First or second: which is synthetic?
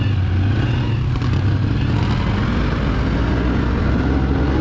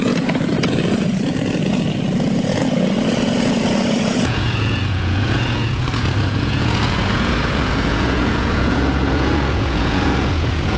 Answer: second